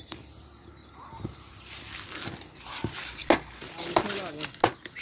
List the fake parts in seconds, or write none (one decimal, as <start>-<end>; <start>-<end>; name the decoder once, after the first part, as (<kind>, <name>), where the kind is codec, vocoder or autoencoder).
none